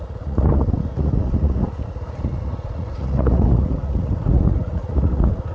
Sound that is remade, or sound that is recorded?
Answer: remade